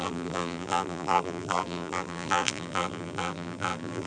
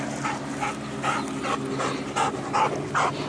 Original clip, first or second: second